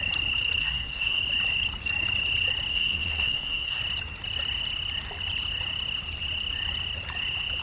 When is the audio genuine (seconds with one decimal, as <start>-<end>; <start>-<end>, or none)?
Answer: 0.0-0.6; 1.2-2.7; 3.8-7.6